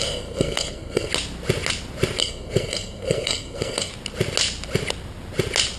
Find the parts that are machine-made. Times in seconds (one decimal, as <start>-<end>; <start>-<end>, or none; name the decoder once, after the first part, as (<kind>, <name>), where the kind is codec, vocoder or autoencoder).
0.0-1.1 (codec, SNAC); 2.2-3.9